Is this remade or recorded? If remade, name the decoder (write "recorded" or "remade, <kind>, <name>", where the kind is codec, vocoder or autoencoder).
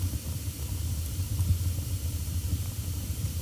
remade, vocoder, BigVGAN v2